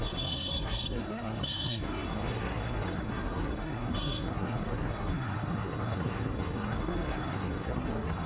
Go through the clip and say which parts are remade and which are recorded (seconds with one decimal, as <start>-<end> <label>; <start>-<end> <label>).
0.0-8.3 remade